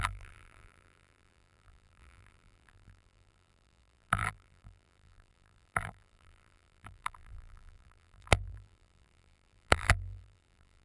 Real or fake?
fake